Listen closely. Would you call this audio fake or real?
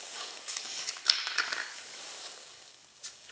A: fake